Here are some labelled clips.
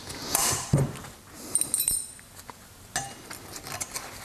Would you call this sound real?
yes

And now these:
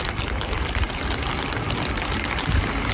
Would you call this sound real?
yes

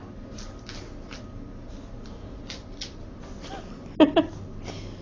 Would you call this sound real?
yes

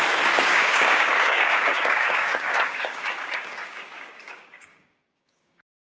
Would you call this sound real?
no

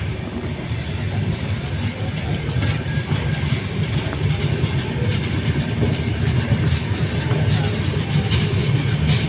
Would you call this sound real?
yes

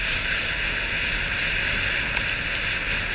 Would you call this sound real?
yes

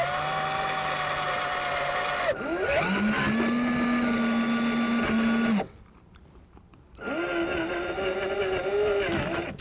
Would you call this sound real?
yes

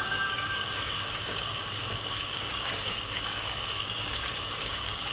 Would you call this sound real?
no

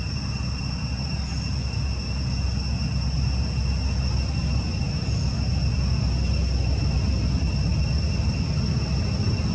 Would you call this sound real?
yes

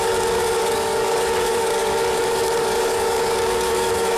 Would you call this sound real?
no